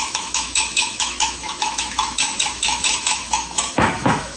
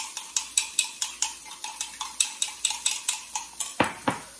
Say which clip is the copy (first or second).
first